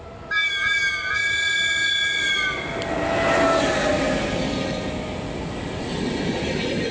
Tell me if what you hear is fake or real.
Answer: real